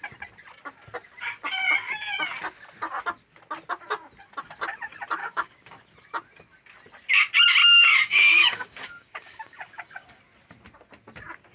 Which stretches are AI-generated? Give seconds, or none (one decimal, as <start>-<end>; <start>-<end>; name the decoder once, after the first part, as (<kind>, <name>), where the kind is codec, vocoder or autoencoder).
5.2-5.8 (codec, DAC); 7.6-10.2